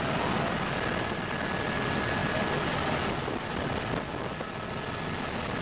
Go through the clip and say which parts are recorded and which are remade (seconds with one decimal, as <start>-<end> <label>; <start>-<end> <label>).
0.0-5.6 recorded